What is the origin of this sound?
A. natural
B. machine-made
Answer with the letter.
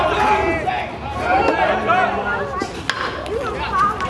A